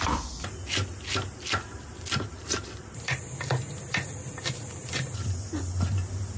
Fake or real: real